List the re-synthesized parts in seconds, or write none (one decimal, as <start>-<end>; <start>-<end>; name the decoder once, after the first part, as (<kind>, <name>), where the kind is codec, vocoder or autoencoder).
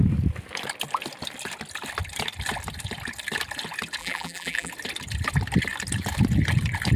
4.0-4.7 (vocoder, BigVGAN v2)